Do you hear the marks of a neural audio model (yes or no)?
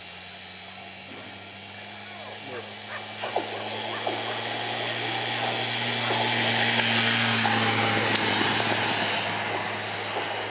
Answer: no